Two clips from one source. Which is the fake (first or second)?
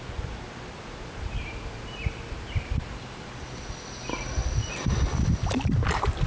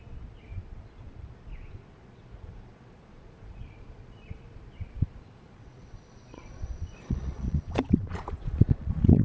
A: second